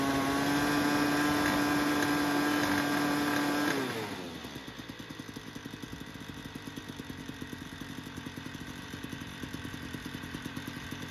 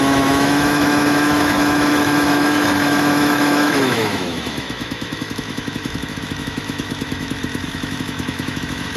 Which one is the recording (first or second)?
first